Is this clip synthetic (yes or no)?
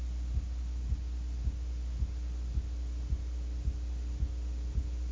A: no